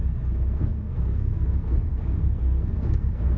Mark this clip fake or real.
fake